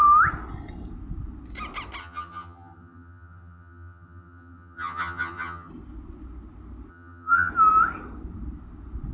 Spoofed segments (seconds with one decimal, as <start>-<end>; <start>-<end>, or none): 2.0-5.7; 6.9-7.5